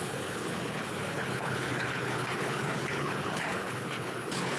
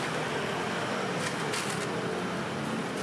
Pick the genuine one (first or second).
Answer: second